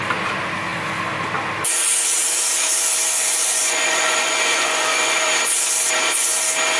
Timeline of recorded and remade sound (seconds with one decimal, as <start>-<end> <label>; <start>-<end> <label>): 0.0-3.2 recorded; 3.2-5.3 remade; 5.3-6.8 recorded